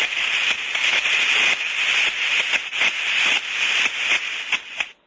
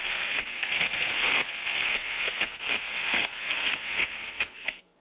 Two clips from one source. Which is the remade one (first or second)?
second